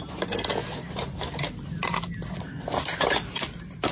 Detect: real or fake real